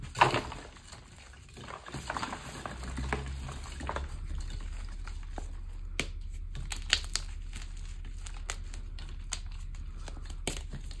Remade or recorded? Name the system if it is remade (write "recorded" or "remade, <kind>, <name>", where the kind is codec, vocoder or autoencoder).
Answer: recorded